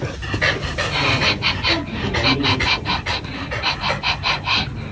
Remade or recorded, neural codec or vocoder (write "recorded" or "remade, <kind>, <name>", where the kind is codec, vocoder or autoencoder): recorded